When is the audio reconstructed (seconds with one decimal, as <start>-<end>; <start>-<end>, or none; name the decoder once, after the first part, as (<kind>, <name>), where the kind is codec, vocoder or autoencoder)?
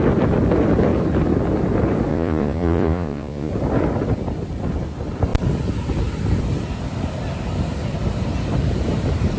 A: 2.1-3.5 (vocoder, Vocos)